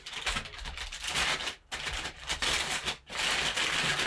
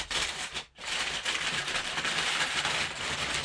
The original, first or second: first